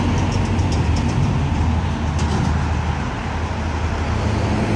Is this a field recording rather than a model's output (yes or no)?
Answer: yes